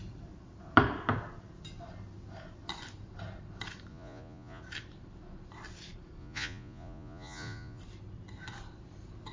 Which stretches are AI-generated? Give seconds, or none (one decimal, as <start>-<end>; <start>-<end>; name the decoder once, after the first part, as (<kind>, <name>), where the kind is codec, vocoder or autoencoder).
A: 3.9-4.6 (vocoder, Vocos); 6.2-7.8